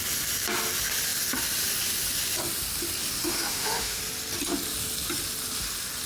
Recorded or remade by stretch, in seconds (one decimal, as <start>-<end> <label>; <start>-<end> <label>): 0.0-3.2 recorded; 3.2-4.0 remade; 4.0-6.1 recorded